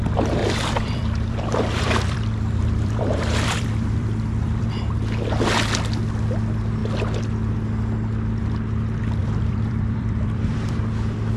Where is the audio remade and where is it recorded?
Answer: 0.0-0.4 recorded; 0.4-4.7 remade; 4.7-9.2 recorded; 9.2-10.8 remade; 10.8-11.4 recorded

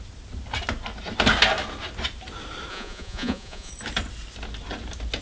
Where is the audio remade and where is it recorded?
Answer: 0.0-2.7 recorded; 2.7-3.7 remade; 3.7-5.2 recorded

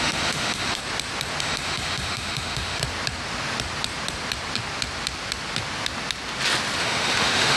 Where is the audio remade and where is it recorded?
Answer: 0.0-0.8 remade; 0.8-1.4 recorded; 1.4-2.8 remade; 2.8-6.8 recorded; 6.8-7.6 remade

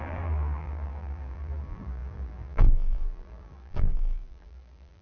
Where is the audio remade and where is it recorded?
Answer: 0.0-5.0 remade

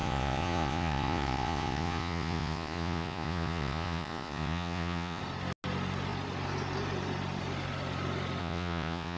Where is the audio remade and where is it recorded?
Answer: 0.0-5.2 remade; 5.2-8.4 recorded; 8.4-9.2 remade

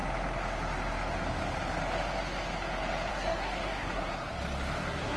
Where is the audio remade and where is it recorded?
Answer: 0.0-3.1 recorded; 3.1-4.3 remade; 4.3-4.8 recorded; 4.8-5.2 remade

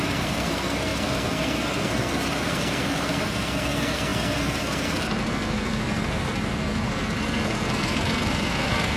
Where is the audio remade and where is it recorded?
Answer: 0.0-9.0 remade